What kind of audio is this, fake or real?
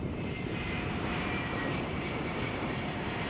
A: fake